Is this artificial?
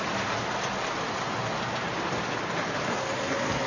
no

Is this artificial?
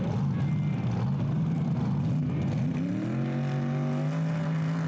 no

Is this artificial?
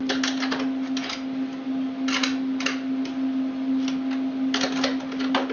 no